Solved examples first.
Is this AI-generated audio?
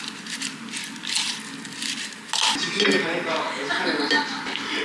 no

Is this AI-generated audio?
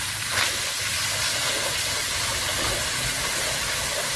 no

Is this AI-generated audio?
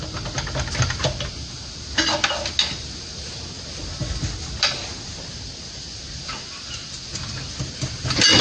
no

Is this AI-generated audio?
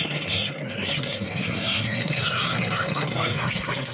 yes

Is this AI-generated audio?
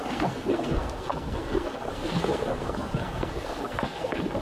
yes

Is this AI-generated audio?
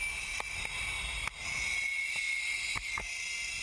no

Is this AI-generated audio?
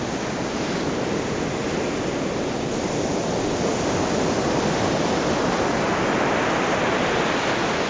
no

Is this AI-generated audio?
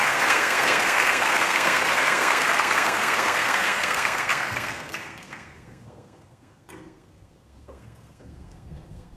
yes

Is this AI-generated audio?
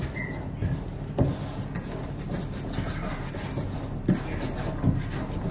no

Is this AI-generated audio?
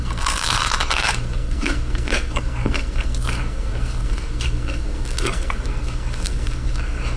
yes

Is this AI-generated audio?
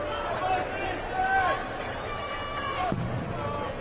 no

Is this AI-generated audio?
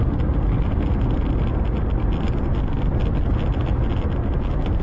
no